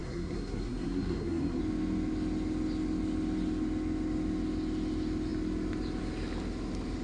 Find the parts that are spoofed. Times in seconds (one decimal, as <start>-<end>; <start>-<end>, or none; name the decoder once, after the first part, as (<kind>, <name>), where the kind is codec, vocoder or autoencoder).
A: 0.0-1.6 (codec, SNAC)